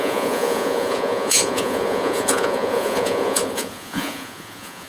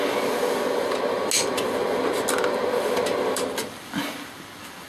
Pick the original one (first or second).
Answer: second